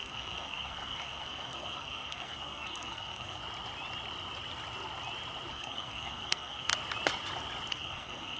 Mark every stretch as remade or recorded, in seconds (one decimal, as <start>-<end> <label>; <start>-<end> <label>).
0.0-3.4 remade; 3.4-5.5 recorded; 5.5-6.7 remade; 6.7-7.7 recorded; 7.7-8.4 remade